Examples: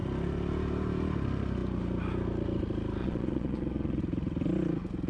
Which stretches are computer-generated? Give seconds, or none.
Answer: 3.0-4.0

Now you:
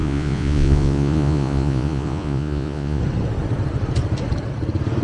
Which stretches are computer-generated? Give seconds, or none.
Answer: 0.0-3.0

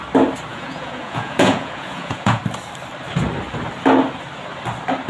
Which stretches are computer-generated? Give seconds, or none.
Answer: 0.5-2.4

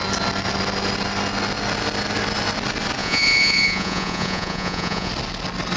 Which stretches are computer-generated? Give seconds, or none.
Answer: 3.0-5.1

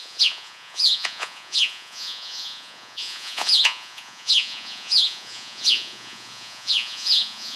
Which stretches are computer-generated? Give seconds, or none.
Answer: 0.0-7.6

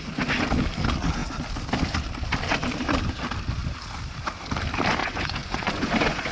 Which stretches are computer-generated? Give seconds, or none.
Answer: 5.0-6.3

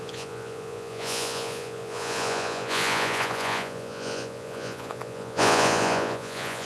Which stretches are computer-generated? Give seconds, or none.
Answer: 0.0-6.7

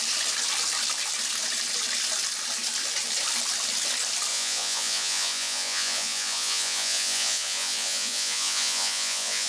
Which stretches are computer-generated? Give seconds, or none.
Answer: 4.3-9.5